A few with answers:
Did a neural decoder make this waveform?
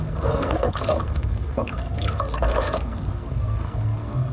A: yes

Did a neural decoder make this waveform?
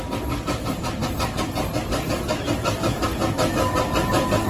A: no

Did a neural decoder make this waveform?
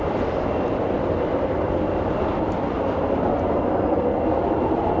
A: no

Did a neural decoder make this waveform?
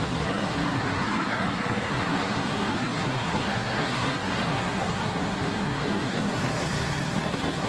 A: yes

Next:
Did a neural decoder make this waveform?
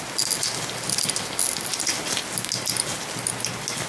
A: no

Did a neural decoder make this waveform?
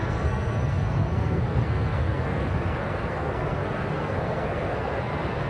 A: yes